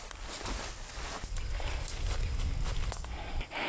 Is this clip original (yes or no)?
yes